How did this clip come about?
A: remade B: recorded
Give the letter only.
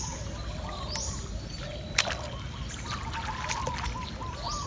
B